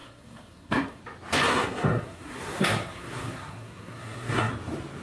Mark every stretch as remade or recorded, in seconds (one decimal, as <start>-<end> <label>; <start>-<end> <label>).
0.0-1.0 remade; 1.0-1.5 recorded; 1.5-4.5 remade; 4.5-5.0 recorded